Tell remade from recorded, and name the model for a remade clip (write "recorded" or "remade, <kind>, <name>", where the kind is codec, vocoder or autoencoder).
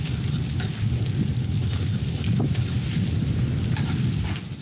recorded